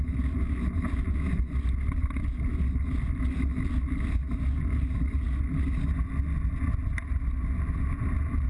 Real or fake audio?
real